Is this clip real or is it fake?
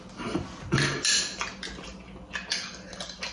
real